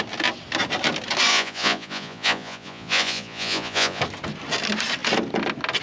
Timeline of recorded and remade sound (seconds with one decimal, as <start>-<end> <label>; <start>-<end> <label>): 0.0-1.3 recorded; 1.3-4.0 remade; 4.0-5.8 recorded